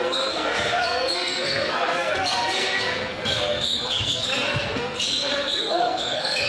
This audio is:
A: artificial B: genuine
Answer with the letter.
A